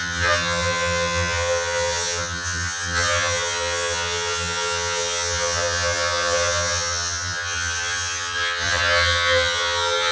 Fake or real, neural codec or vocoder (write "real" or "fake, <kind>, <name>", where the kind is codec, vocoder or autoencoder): fake, vocoder, HiFi-GAN